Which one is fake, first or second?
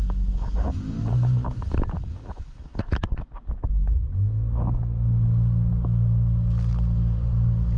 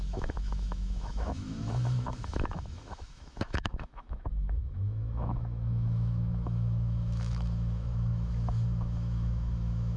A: second